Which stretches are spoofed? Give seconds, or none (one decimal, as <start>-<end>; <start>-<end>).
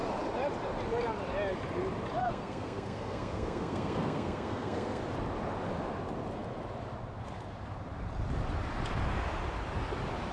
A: 2.2-5.0